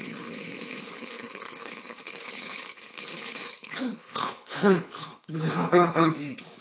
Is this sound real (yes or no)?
no